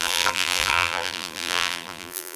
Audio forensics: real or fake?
fake